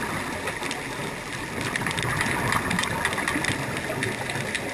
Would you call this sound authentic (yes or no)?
yes